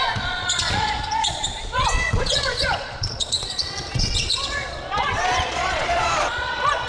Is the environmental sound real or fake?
fake